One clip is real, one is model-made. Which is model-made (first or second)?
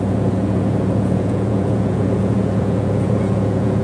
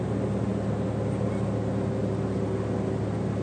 first